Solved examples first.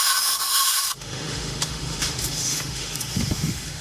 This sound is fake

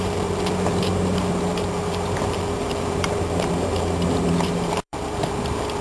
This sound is fake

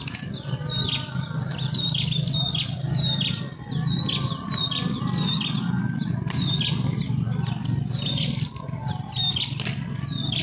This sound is real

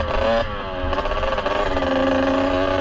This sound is real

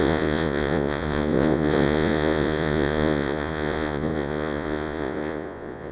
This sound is fake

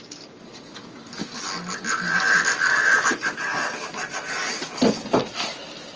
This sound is real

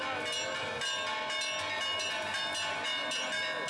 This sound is real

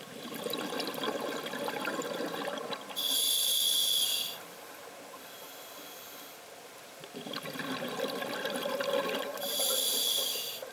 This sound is real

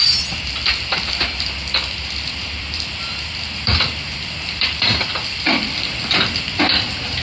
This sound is fake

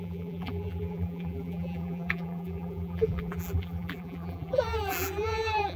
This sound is fake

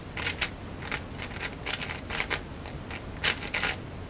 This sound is real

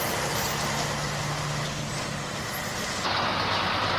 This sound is real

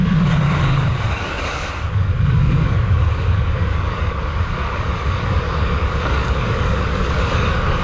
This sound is fake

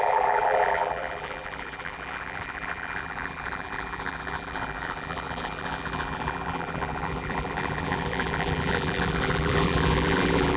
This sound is fake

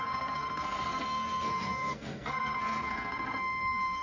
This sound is fake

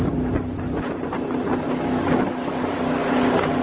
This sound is real